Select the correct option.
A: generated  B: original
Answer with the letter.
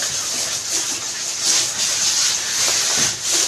B